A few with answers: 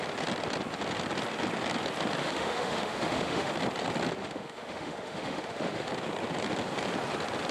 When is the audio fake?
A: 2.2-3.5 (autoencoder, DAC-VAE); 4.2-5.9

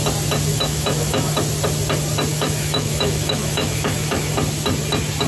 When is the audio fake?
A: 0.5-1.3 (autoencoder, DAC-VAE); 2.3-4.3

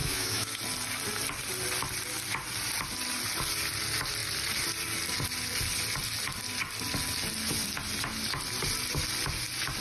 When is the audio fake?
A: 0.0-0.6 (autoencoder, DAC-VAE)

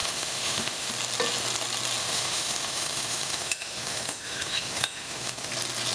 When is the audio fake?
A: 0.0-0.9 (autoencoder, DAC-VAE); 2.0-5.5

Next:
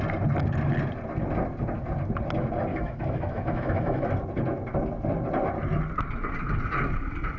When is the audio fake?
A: 2.7-4.1 (autoencoder, DAC-VAE)